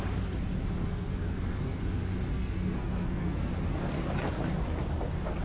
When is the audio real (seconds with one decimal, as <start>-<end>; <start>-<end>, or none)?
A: 0.0-0.9; 1.8-2.3; 3.5-5.4